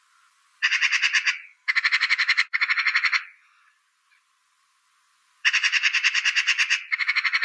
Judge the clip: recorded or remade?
remade